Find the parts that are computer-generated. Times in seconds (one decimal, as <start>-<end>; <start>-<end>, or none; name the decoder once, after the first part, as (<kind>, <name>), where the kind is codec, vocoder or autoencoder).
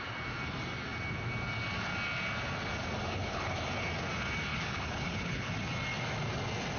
3.1-3.6 (codec, HILCodec); 4.5-5.5